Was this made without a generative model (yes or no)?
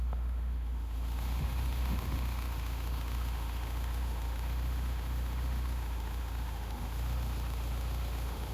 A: no